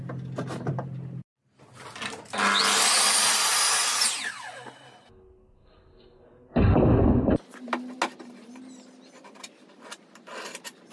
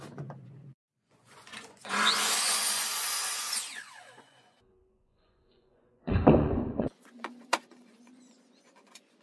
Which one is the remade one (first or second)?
second